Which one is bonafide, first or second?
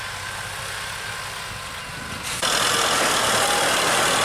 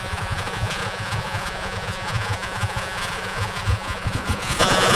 first